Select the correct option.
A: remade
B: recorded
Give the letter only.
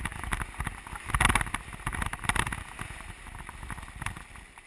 B